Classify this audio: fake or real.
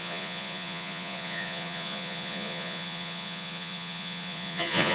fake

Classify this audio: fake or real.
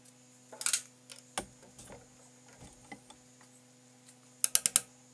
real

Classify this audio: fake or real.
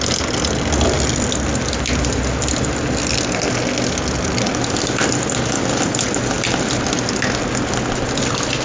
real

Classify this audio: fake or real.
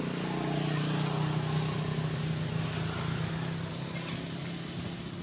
real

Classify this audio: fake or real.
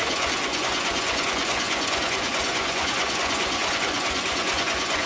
fake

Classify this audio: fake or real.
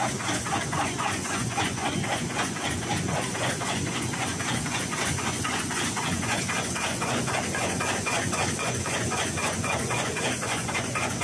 fake